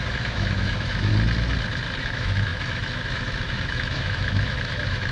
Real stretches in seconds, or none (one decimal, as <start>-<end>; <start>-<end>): 1.1-2.0